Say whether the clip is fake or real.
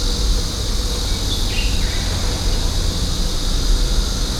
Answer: real